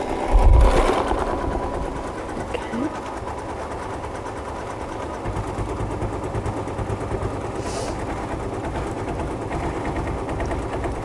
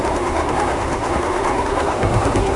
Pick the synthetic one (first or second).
second